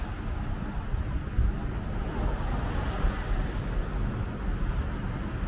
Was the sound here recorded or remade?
recorded